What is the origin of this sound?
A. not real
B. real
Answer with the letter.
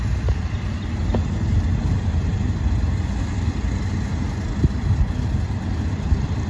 B